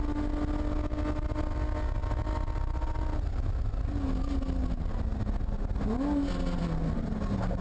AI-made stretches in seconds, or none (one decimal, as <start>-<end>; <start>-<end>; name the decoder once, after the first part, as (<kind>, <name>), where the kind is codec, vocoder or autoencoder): none